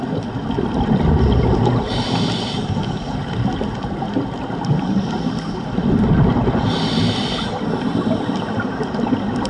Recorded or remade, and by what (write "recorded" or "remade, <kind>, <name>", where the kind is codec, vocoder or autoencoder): recorded